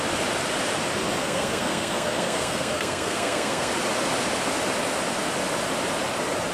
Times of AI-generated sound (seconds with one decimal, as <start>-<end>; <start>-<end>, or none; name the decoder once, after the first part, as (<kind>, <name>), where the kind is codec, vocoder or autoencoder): 1.2-3.7 (codec, SNAC)